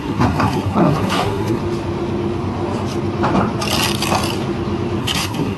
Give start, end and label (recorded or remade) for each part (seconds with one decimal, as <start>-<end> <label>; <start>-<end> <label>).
0.0-1.6 remade; 1.6-5.0 recorded; 5.0-5.6 remade